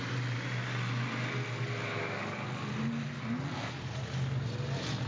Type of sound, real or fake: real